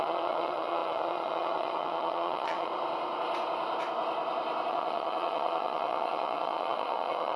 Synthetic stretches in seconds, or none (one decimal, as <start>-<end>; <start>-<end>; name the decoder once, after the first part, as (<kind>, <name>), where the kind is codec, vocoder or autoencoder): 0.0-2.7 (vocoder, Vocos); 4.7-7.4